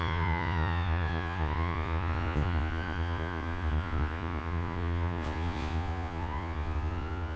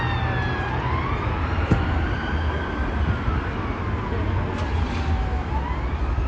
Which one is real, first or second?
second